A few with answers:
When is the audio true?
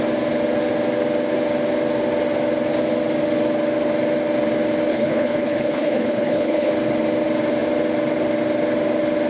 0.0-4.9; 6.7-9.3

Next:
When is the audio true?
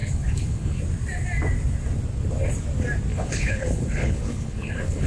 0.8-3.1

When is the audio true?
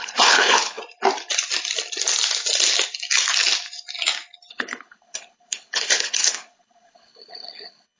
0.8-4.5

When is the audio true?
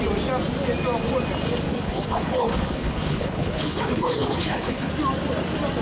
0.0-1.7; 4.9-5.8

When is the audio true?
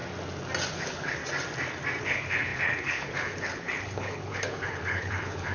0.0-0.7; 1.2-2.0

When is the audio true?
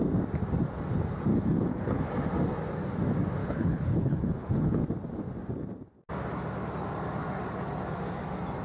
0.0-1.3; 2.0-3.4; 4.8-8.6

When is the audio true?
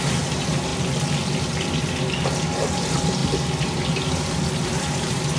0.0-5.4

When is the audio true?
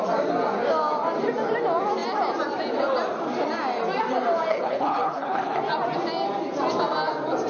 0.0-4.5; 5.6-7.5